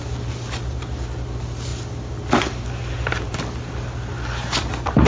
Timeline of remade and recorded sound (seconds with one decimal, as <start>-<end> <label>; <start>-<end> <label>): 0.0-5.1 recorded